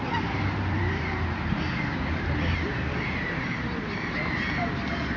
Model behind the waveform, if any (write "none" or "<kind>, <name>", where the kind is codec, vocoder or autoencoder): vocoder, BigVGAN v2